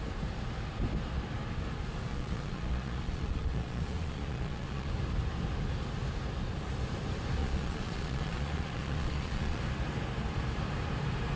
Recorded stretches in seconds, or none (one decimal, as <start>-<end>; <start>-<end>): 0.0-2.1; 4.9-7.4; 9.6-11.4